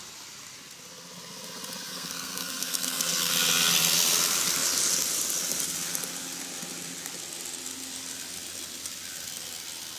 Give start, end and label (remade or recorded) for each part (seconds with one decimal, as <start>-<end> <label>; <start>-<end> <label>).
0.0-1.9 recorded; 1.9-3.3 remade; 3.3-10.0 recorded